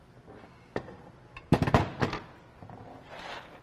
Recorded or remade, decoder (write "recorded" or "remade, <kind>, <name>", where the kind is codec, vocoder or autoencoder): recorded